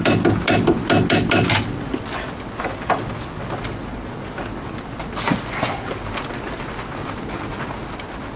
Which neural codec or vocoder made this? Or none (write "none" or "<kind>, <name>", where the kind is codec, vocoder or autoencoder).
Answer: none